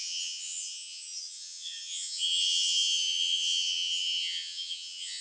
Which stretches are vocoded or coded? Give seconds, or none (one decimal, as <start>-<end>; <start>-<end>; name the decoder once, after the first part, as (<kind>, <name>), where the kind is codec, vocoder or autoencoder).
0.0-5.2 (vocoder, HiFi-GAN)